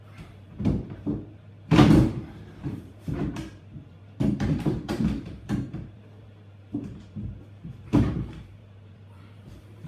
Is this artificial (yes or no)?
yes